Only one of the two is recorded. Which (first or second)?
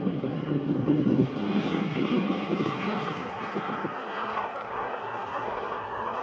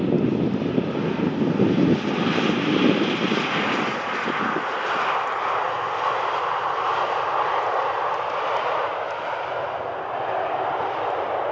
second